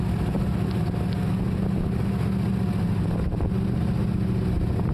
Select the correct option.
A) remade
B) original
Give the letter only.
B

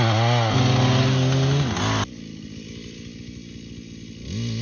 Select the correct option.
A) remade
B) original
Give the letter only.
B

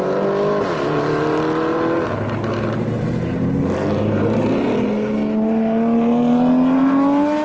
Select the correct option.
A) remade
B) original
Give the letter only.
B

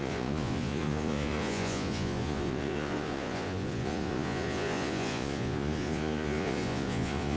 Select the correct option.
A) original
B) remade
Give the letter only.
B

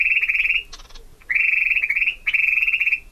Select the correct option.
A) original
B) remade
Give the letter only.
A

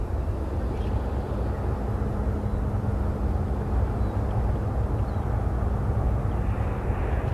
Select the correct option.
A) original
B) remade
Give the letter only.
A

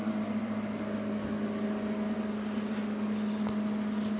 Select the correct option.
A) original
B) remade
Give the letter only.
A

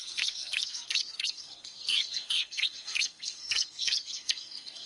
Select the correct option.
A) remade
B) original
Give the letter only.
A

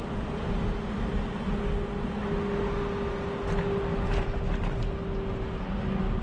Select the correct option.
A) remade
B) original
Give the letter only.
B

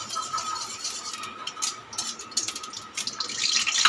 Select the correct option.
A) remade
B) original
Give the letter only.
B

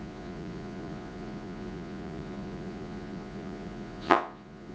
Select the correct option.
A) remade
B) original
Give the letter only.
A